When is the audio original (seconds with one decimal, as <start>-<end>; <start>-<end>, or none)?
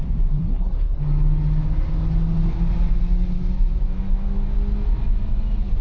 0.0-0.4; 1.0-5.8